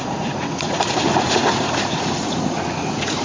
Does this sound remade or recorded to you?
remade